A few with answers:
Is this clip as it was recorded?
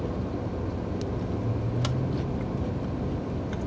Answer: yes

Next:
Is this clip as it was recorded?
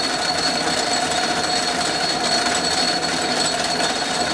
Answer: no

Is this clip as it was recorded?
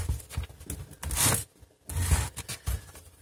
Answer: yes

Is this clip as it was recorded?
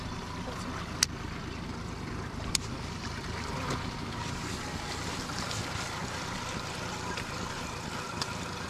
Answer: yes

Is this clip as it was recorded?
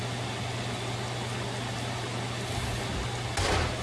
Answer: yes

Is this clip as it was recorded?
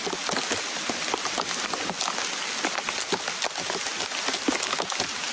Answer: yes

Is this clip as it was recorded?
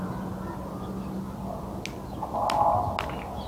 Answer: yes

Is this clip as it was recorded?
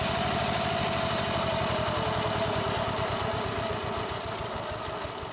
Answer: yes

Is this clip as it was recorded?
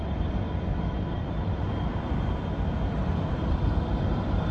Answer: no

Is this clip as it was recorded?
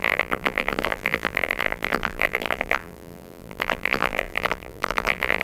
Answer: no